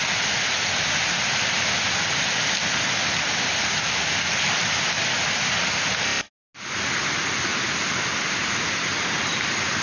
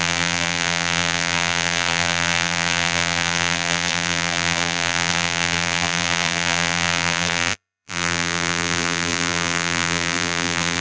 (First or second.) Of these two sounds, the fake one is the second